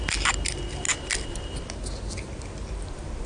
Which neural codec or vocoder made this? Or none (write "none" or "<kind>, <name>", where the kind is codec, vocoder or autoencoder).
none